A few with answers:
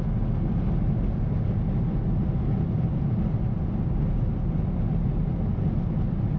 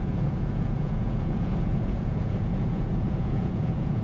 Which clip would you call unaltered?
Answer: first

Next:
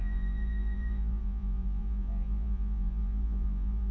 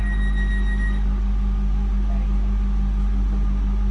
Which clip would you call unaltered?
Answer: second